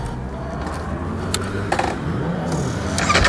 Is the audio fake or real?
real